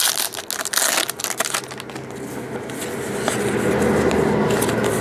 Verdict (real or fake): real